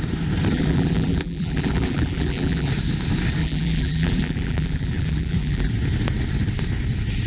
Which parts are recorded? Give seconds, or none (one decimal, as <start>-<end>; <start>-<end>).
0.0-0.5; 2.7-3.4; 5.7-7.3